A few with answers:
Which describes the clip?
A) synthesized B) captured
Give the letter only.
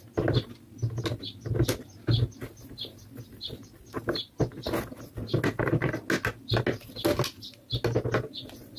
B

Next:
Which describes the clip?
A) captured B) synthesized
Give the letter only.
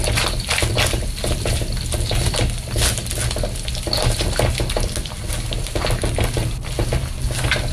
A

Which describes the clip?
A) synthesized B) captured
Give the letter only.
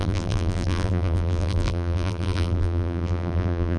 A